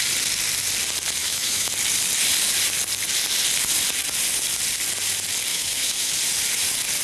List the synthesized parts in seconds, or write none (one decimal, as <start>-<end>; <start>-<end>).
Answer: 1.2-1.7; 5.5-6.1